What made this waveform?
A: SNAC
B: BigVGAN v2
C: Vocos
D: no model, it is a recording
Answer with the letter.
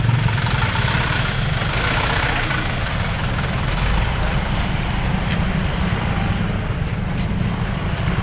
B